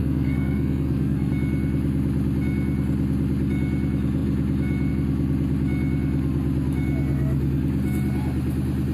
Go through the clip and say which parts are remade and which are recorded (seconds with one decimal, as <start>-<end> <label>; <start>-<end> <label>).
0.0-1.3 remade; 1.3-8.9 recorded